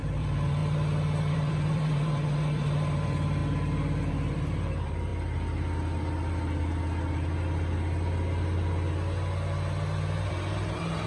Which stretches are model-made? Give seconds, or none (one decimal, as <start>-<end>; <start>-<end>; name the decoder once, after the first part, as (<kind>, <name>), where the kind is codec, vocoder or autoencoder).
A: 0.0-0.6 (vocoder, BigVGAN v2); 1.3-3.4; 4.1-5.1; 10.3-11.1